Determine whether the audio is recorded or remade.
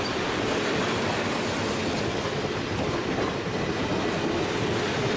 recorded